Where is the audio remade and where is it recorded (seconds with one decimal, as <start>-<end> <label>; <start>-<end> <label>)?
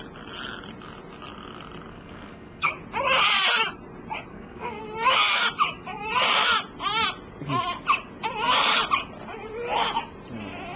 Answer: 0.0-1.9 recorded; 1.9-2.7 remade; 2.7-4.3 recorded; 4.3-4.8 remade; 4.8-10.8 recorded